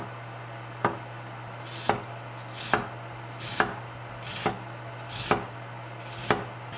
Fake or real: real